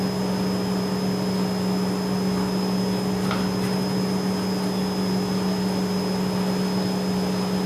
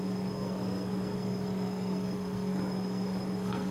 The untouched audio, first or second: first